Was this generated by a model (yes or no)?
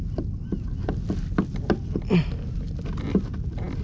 no